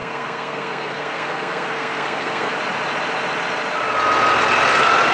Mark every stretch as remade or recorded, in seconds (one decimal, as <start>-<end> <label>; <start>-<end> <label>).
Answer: 0.0-2.5 remade; 2.5-5.1 recorded